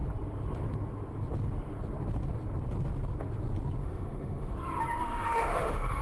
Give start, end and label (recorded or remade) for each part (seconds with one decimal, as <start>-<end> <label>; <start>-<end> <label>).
0.0-3.8 recorded; 3.8-4.5 remade; 4.5-5.0 recorded; 5.0-6.0 remade